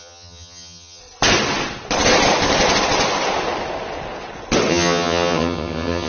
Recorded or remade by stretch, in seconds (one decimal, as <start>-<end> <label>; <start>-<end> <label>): 0.0-1.0 remade; 1.0-4.7 recorded; 4.7-6.1 remade